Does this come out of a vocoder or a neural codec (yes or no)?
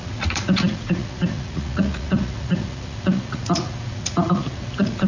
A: yes